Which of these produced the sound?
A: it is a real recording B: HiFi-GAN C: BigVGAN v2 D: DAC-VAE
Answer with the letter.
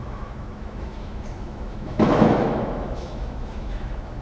D